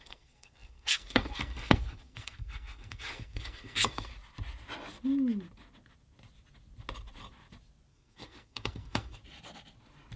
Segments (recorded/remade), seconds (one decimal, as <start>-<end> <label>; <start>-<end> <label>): 0.0-4.1 remade; 4.1-7.9 recorded; 7.9-9.2 remade; 9.2-10.2 recorded